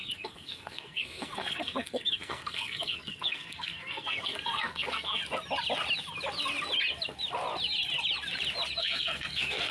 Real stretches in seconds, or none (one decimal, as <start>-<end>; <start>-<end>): 5.2-8.8